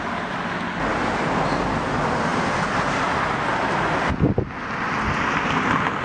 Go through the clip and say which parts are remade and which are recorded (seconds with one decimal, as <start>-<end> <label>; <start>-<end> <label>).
0.0-6.0 recorded